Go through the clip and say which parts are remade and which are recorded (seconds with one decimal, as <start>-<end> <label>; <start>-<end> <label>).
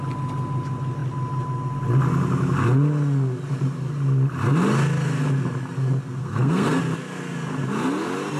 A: 0.0-6.2 recorded; 6.2-6.8 remade; 6.8-8.4 recorded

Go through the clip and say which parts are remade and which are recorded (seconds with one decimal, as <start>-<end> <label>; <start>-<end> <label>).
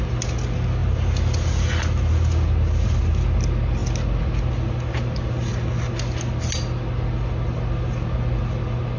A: 0.0-9.0 recorded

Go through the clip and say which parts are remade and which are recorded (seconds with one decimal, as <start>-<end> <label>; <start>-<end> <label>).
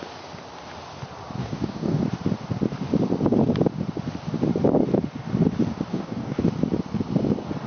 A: 0.0-1.4 recorded; 1.4-2.0 remade; 2.0-5.9 recorded; 5.9-6.4 remade; 6.4-7.7 recorded